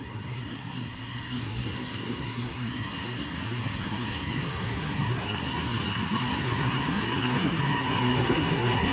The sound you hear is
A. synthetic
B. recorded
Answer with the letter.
A